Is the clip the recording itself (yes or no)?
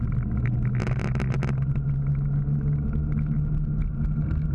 yes